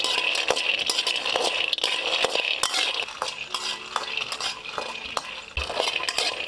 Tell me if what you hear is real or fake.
real